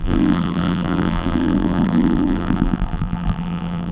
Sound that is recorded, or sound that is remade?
remade